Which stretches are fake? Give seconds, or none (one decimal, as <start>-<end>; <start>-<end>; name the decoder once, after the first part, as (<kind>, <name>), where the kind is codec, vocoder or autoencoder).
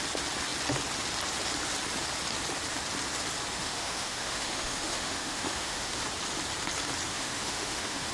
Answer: 3.5-6.0 (autoencoder, DAC-VAE); 7.1-8.1